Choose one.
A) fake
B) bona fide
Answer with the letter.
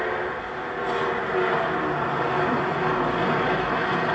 B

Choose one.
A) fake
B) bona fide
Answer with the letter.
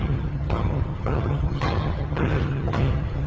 A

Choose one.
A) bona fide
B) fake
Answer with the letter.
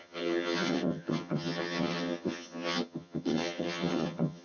B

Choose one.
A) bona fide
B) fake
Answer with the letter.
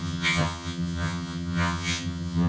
B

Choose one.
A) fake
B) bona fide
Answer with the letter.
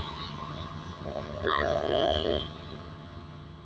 A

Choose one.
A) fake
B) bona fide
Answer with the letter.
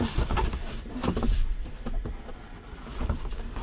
B